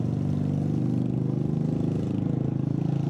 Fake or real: real